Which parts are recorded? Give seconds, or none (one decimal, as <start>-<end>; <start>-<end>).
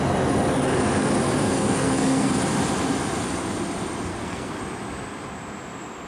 0.0-1.4; 2.3-4.1; 4.6-6.1